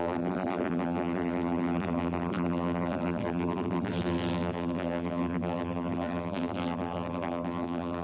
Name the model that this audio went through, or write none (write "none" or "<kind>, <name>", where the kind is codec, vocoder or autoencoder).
vocoder, BigVGAN v2